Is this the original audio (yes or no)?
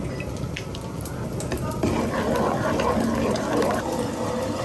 yes